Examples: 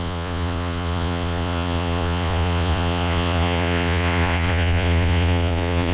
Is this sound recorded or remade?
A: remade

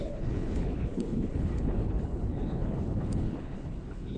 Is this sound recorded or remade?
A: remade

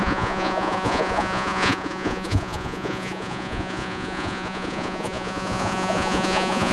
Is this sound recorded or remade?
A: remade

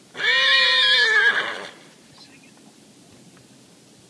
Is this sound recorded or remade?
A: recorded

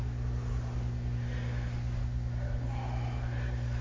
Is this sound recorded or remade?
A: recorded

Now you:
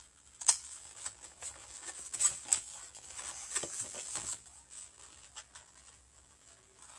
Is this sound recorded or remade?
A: remade